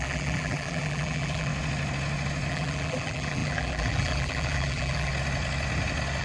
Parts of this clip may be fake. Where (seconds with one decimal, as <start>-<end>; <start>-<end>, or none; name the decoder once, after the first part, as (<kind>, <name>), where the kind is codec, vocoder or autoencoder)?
0.0-1.5 (vocoder, BigVGAN v2); 2.5-5.1